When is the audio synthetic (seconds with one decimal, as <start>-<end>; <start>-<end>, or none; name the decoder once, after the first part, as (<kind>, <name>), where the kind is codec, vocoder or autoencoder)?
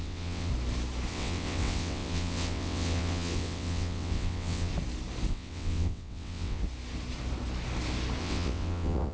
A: 0.0-0.5 (vocoder, WaveNeXt); 1.1-4.7; 5.3-6.6; 8.2-9.1